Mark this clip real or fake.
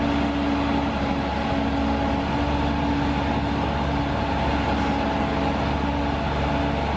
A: real